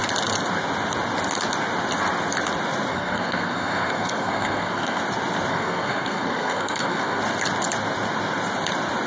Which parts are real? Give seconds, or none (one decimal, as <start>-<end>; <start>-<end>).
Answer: 0.0-2.9; 5.0-5.5; 7.2-9.1